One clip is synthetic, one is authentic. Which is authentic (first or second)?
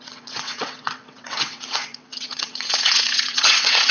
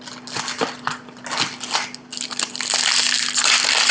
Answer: second